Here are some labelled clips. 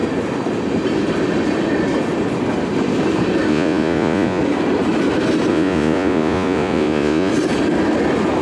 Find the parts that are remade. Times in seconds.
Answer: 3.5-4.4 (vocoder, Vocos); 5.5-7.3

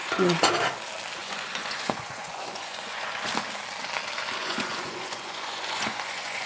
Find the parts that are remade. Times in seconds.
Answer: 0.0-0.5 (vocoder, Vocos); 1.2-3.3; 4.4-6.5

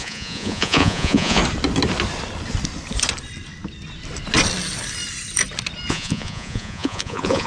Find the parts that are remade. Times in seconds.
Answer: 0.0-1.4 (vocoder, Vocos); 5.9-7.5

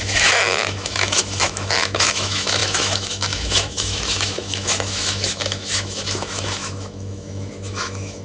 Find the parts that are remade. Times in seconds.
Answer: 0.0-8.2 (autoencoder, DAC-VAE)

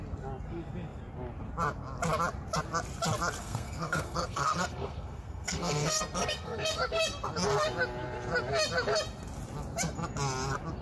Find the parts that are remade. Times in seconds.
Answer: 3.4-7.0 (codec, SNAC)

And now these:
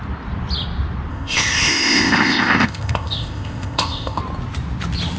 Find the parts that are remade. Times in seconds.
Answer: 1.1-4.2 (codec, ZipCodec)

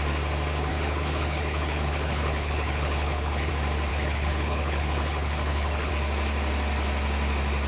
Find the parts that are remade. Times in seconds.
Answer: 0.7-3.5 (codec, HILCodec); 3.9-5.9

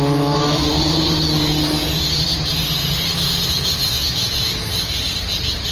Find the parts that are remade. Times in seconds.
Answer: 0.0-0.7 (autoencoder, DAC-VAE); 3.9-4.7